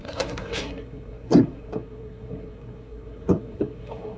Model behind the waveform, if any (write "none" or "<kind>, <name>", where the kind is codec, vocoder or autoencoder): codec, SNAC